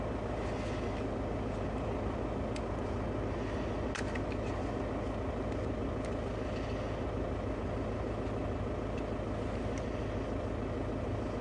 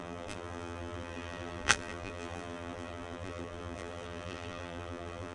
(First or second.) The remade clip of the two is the second